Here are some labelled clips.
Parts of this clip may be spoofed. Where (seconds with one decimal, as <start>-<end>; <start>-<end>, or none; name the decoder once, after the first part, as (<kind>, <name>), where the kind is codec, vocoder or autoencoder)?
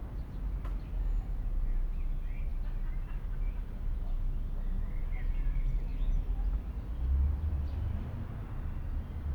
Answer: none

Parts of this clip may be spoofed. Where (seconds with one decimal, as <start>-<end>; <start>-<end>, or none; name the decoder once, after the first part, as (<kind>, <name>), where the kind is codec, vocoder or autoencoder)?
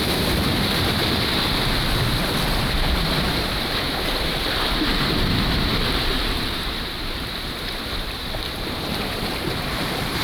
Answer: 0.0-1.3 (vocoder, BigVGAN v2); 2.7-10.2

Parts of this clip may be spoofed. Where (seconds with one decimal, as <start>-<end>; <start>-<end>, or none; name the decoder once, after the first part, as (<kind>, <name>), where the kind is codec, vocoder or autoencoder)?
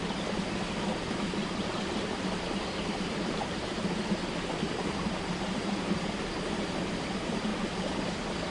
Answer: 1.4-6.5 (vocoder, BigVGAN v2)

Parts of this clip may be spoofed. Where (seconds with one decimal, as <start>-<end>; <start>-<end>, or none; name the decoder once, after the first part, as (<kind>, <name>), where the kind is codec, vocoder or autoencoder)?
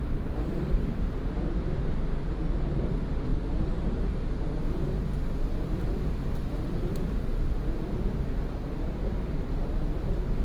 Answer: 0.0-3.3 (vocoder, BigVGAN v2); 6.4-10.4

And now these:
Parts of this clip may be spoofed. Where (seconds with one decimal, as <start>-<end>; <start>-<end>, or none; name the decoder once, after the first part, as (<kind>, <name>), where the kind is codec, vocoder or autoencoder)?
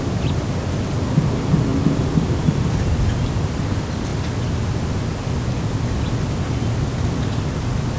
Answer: 1.7-2.9 (vocoder, BigVGAN v2)